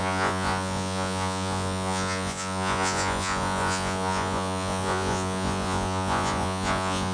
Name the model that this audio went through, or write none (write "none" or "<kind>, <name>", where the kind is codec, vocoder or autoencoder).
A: vocoder, Vocos